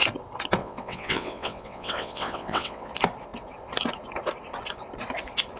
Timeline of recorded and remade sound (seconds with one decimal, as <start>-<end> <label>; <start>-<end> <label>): 0.0-0.6 recorded; 0.6-2.9 remade; 2.9-5.6 recorded